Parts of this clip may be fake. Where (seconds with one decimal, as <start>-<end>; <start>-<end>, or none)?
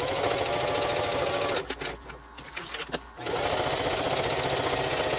none